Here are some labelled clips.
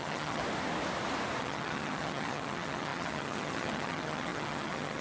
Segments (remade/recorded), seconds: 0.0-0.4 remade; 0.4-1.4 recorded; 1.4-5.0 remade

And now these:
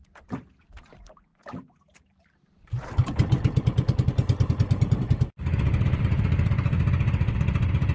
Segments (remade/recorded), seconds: 0.0-7.9 recorded